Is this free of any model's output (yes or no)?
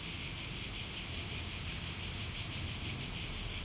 yes